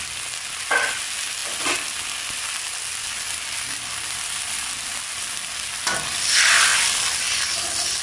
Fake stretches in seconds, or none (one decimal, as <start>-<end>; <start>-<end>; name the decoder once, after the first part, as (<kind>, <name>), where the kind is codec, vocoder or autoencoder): none